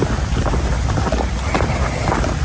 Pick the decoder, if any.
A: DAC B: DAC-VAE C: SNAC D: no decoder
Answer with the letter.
D